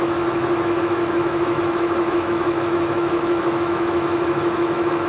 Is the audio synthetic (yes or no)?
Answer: yes